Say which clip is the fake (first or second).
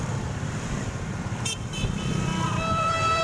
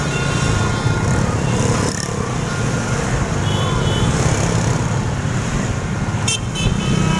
first